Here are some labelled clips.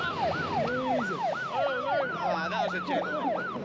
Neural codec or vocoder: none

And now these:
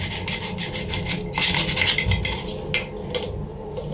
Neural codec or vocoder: none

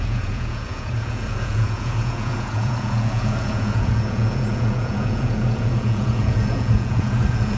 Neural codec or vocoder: vocoder, Vocos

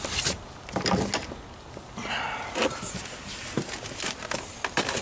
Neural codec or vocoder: none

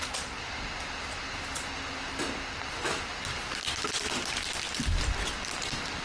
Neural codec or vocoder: none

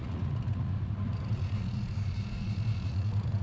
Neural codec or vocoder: vocoder, Vocos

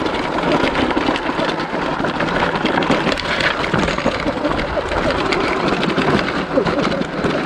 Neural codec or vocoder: none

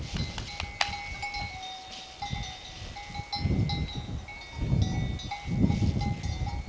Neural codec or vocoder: none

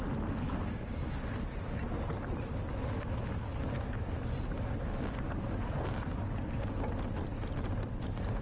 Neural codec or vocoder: none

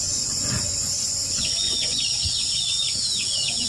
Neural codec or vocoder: vocoder, Vocos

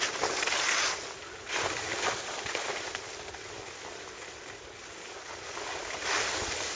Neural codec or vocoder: none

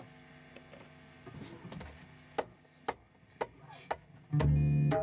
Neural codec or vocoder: none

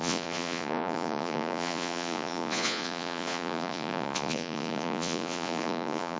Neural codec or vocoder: vocoder, Vocos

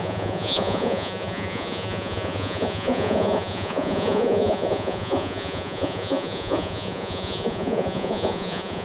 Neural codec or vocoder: vocoder, Vocos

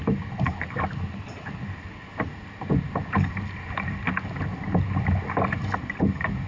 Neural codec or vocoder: none